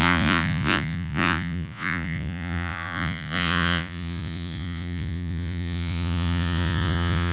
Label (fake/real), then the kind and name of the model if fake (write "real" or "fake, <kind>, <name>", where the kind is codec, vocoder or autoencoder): fake, vocoder, Vocos